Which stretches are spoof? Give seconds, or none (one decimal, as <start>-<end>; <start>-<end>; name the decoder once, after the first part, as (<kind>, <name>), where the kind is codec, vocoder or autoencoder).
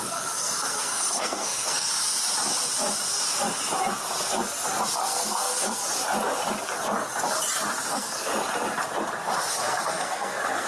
0.0-1.9 (codec, SNAC); 5.0-5.8; 7.9-8.3; 9.5-10.7